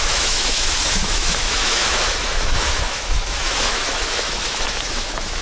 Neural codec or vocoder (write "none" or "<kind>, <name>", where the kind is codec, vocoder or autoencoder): autoencoder, DAC-VAE